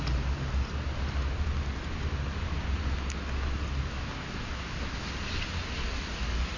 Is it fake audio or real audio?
real